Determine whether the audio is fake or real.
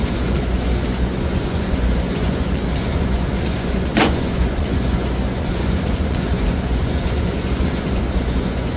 fake